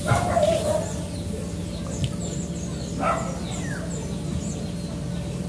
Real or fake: real